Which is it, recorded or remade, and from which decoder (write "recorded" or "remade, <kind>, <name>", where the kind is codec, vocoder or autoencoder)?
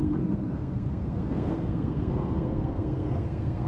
remade, codec, SNAC